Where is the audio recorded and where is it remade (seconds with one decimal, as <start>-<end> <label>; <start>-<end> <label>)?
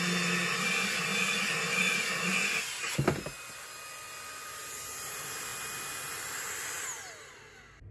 0.0-7.9 recorded